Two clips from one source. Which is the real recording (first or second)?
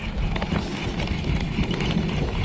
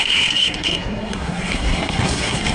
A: first